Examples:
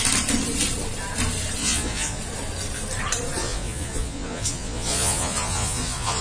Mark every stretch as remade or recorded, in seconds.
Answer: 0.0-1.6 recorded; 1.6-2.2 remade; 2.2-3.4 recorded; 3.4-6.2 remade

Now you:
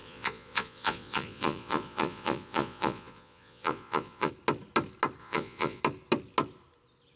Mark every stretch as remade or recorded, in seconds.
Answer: 0.0-4.3 remade; 4.3-5.2 recorded; 5.2-5.8 remade; 5.8-7.2 recorded

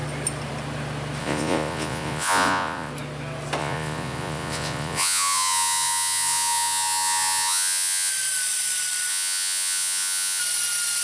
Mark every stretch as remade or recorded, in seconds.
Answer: 0.0-1.2 recorded; 1.2-2.9 remade; 2.9-3.6 recorded; 3.6-8.1 remade; 8.1-9.1 recorded; 9.1-10.4 remade; 10.4-11.0 recorded

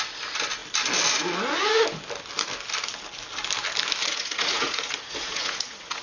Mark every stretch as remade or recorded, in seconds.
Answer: 0.0-4.0 recorded; 4.0-6.0 remade

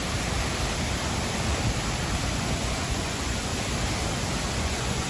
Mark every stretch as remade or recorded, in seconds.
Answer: 0.0-2.3 recorded; 2.3-3.5 remade; 3.5-4.6 recorded; 4.6-5.1 remade

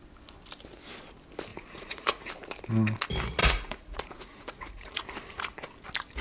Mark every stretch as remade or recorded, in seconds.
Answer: 0.0-1.5 recorded; 1.5-2.3 remade; 2.3-3.4 recorded; 3.4-5.0 remade; 5.0-6.2 recorded

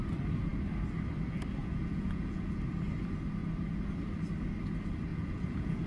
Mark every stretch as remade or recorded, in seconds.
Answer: 0.0-1.6 recorded; 1.6-2.6 remade; 2.6-5.1 recorded; 5.1-5.9 remade

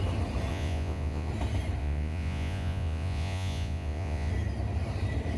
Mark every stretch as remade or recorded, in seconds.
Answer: 0.0-0.5 recorded; 0.5-1.3 remade; 1.3-1.8 recorded; 1.8-4.3 remade; 4.3-5.4 recorded